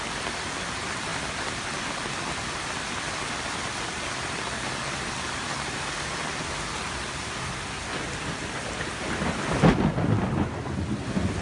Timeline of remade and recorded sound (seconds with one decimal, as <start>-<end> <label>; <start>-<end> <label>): 0.0-11.4 recorded